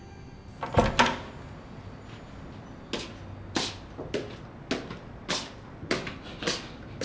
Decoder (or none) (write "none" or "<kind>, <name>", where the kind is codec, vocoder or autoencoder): none